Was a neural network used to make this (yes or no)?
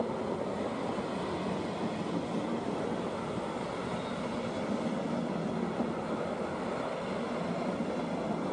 no